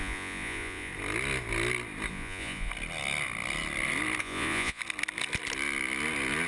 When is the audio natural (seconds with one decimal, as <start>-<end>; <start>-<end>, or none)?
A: 0.9-2.1; 2.7-4.2; 4.8-6.5